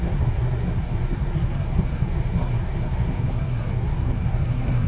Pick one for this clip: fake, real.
fake